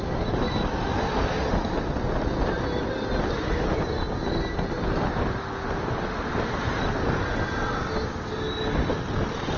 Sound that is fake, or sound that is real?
real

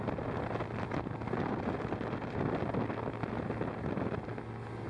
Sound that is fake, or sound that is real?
real